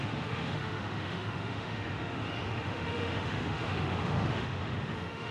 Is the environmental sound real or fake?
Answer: fake